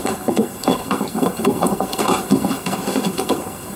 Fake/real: fake